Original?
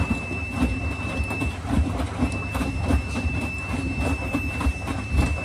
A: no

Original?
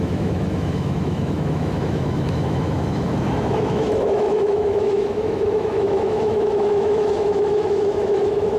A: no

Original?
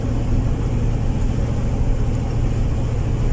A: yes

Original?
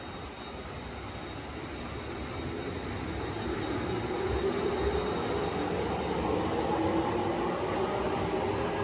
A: yes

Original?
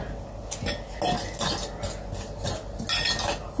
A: yes